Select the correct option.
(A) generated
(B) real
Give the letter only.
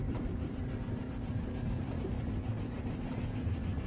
A